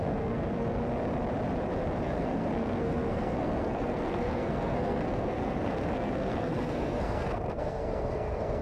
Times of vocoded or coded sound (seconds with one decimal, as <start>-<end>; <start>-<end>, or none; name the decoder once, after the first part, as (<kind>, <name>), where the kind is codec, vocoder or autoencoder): 0.0-0.8 (codec, SNAC); 2.0-8.6